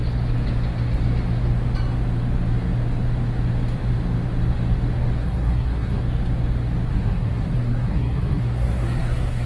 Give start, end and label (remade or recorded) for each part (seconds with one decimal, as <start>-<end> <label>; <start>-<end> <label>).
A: 0.0-5.2 recorded; 5.2-6.0 remade; 6.0-6.9 recorded; 6.9-9.5 remade